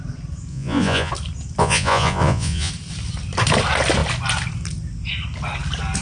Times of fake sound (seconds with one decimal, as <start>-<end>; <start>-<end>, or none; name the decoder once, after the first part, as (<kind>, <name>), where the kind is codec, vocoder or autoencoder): 0.5-1.1 (vocoder, Vocos); 1.6-2.7